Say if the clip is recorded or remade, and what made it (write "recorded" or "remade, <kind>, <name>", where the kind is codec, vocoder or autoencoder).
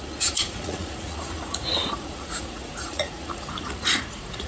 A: remade, vocoder, Vocos